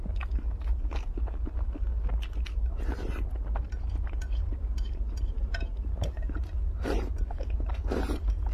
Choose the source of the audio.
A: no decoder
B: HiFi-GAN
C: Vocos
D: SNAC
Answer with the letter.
A